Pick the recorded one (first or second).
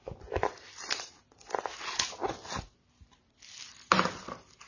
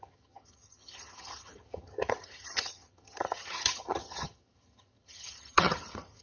first